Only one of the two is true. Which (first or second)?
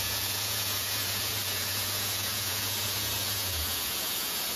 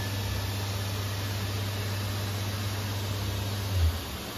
second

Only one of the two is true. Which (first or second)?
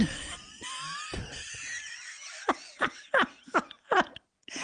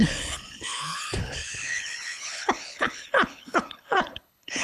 first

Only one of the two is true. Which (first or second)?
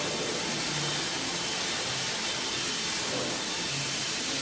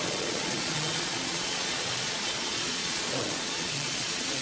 first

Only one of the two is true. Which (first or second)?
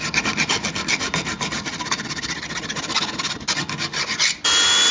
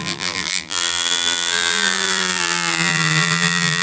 first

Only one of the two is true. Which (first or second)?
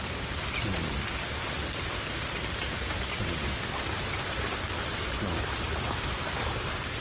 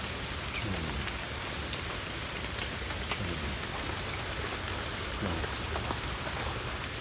second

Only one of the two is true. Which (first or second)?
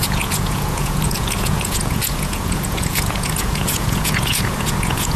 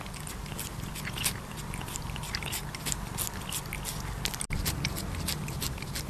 second